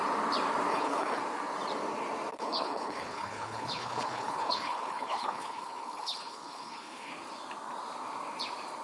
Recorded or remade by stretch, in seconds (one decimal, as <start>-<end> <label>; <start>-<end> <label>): 0.0-0.7 recorded; 0.7-1.2 remade; 1.2-2.3 recorded; 2.3-7.1 remade; 7.1-8.8 recorded